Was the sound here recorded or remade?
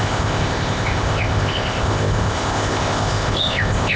remade